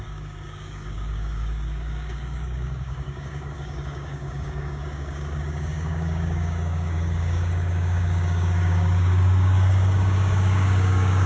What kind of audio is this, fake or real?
fake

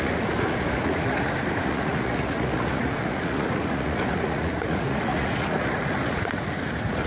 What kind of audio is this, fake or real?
fake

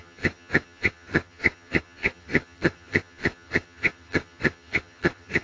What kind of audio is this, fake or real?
fake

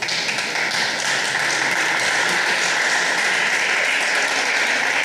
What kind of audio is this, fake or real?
real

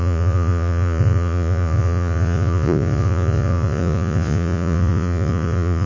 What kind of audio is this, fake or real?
fake